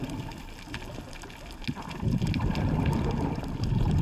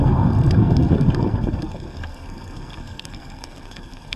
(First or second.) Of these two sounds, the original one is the first